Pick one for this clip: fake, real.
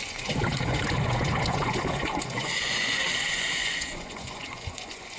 fake